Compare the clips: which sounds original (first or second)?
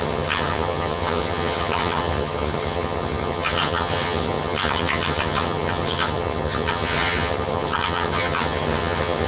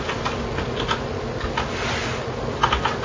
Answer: second